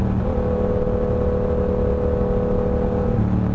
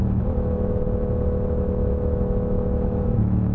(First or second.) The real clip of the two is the first